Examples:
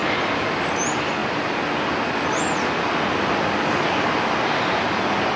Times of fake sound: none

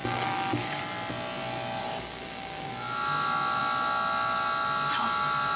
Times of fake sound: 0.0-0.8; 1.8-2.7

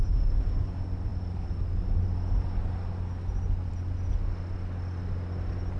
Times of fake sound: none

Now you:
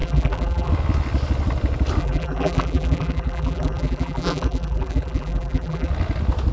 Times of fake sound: 0.0-0.7; 2.0-5.9

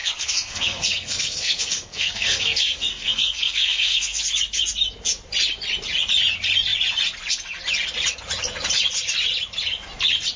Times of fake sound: 0.0-4.2

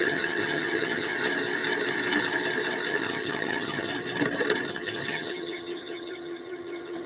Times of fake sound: 0.0-1.1; 2.9-3.9; 4.7-7.1